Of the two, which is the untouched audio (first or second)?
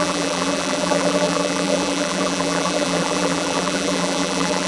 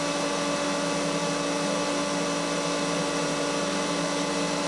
second